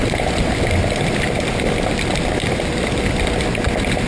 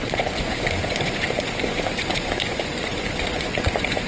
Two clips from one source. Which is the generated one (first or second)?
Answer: second